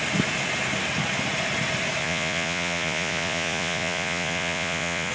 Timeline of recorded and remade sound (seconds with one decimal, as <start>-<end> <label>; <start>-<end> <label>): 0.0-2.0 recorded; 2.0-5.1 remade